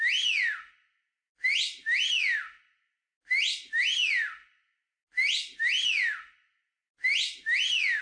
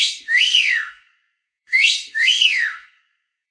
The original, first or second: first